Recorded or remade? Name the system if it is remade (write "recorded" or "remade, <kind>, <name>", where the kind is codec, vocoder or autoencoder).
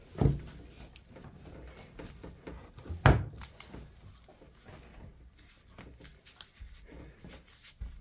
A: recorded